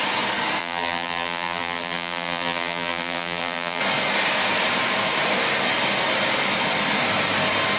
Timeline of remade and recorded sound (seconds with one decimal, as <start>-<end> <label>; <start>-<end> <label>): 0.0-0.6 recorded; 0.6-3.8 remade; 3.8-7.8 recorded